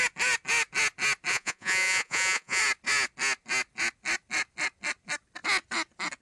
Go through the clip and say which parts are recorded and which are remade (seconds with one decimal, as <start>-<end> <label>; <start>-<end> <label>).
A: 0.0-1.3 recorded; 1.3-2.6 remade; 2.6-6.2 recorded